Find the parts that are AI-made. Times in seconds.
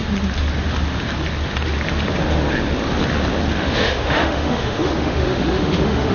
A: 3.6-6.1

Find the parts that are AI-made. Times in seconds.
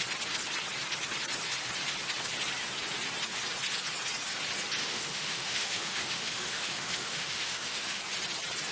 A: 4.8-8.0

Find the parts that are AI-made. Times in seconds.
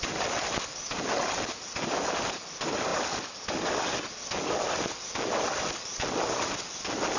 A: none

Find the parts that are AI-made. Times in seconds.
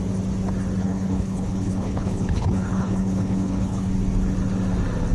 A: 0.8-3.9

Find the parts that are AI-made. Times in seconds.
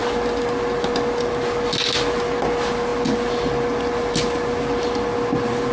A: none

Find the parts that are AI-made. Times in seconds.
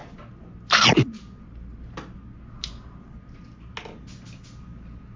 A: none